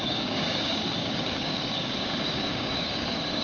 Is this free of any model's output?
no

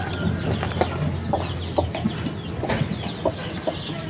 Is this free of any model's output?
yes